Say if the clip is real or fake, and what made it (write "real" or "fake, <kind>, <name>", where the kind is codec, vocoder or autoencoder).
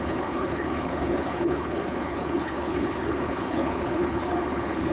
fake, codec, HILCodec